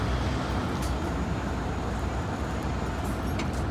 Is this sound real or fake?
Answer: real